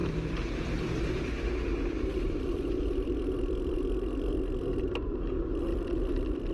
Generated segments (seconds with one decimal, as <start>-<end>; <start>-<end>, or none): 0.0-3.8; 4.7-5.2; 5.7-6.5